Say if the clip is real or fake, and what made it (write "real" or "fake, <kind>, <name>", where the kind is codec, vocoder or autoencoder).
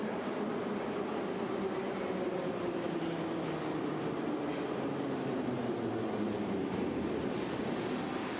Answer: real